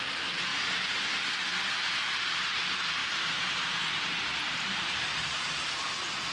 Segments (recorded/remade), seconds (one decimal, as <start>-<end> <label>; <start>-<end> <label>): 0.0-3.0 recorded; 3.0-5.7 remade; 5.7-6.3 recorded